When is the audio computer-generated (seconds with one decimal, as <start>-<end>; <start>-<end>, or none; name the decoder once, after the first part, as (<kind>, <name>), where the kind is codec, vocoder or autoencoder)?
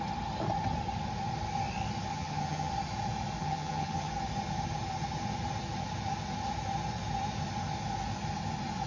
2.1-2.7 (vocoder, HiFi-GAN); 3.4-4.1